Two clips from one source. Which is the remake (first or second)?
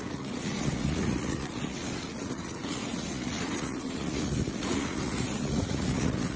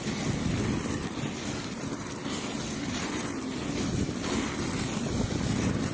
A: first